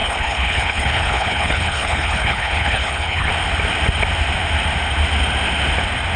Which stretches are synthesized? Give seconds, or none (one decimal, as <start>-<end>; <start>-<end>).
0.0-3.3